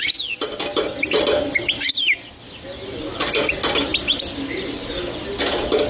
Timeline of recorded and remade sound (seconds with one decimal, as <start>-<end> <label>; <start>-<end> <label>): 0.0-5.9 recorded